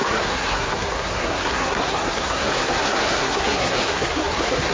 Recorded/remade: remade